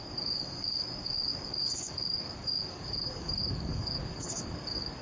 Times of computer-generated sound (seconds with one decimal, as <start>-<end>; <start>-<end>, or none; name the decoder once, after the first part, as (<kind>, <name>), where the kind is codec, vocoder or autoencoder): 0.0-5.0 (codec, DAC)